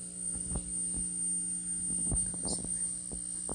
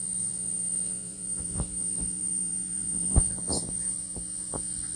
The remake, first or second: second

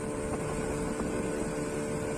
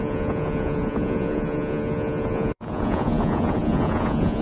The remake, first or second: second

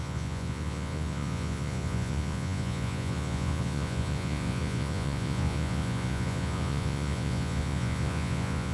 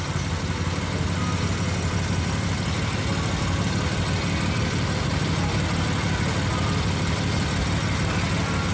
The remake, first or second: first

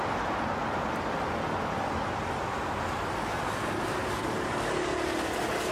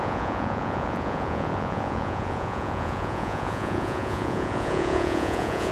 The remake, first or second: second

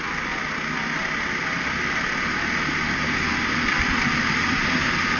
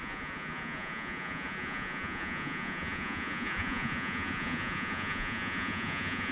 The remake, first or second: second